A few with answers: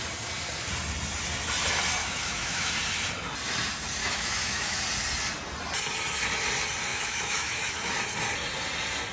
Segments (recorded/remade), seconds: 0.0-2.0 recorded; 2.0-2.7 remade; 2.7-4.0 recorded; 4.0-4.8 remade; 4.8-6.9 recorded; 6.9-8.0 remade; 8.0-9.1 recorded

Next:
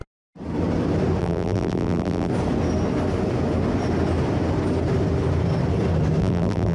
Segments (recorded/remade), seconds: 0.0-1.2 recorded; 1.2-2.3 remade; 2.3-6.2 recorded; 6.2-6.7 remade

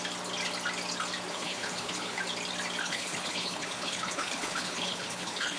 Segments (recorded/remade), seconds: 0.0-1.3 recorded; 1.3-2.2 remade; 2.2-2.8 recorded; 2.8-5.6 remade

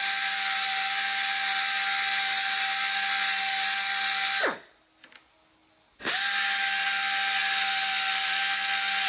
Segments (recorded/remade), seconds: 0.0-9.1 recorded

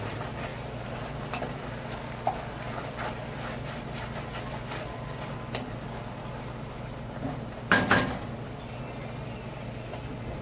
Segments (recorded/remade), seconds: 0.0-10.4 recorded

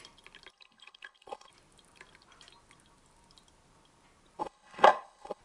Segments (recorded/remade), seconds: 0.0-0.5 recorded; 0.5-1.5 remade; 1.5-4.4 recorded; 4.4-5.4 remade